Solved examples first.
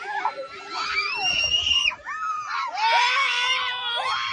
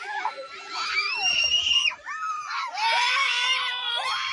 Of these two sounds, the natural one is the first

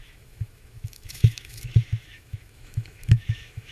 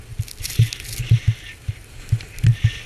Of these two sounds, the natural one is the second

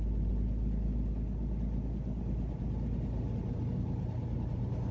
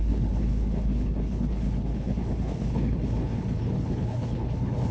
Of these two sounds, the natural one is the first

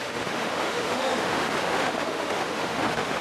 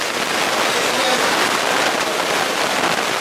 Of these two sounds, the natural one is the second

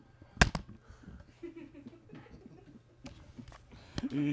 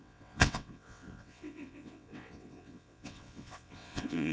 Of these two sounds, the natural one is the first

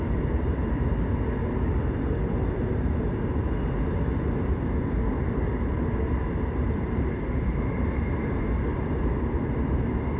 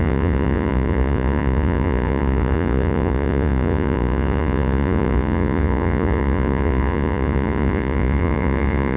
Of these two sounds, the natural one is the first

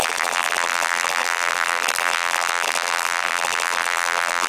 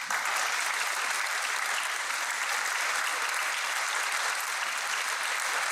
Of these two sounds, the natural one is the second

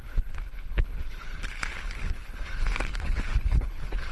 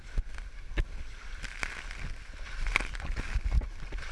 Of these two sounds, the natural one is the second